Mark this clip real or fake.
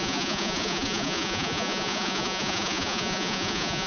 fake